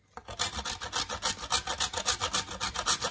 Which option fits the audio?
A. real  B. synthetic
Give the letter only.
A